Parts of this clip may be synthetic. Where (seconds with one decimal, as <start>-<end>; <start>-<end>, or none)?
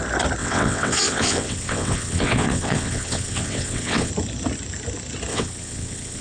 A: 0.4-4.1; 5.3-6.2